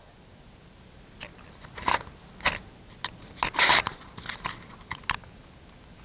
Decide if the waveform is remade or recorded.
recorded